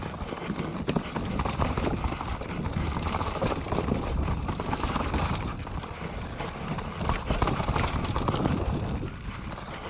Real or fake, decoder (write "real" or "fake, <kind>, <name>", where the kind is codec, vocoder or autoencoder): fake, vocoder, BigVGAN v2